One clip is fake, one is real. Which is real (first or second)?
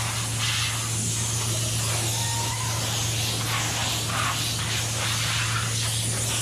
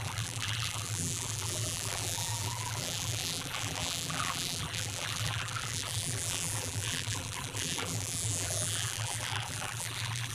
first